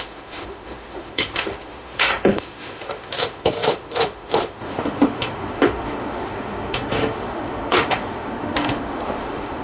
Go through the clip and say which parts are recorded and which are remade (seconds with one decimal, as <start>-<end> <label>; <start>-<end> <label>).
0.0-9.6 remade